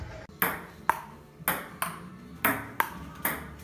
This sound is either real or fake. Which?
real